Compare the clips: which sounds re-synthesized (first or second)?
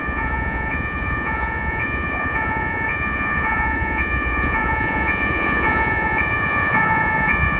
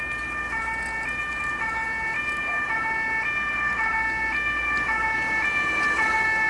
first